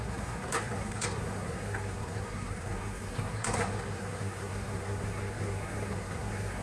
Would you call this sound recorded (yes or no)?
no